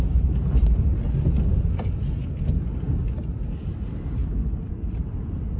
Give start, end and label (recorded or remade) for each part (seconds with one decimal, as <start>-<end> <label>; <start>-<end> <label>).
0.0-4.2 recorded; 4.2-4.7 remade; 4.7-5.6 recorded